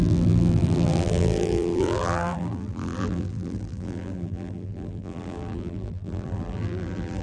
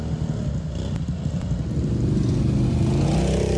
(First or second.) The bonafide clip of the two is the second